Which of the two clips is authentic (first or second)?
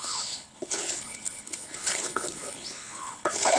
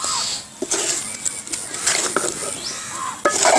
second